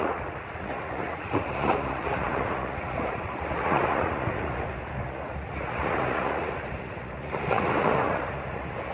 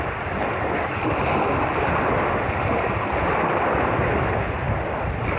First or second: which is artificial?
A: first